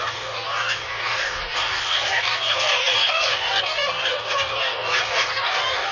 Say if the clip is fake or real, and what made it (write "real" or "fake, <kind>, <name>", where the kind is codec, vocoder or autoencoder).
fake, codec, DAC